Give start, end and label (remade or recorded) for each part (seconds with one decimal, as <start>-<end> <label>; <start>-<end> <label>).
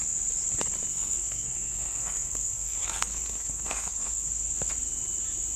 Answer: 0.0-0.9 recorded; 0.9-4.3 remade; 4.3-5.6 recorded